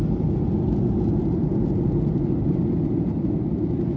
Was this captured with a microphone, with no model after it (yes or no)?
no